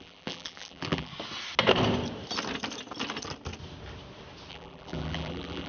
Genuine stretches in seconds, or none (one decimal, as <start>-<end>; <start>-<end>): 1.1-4.5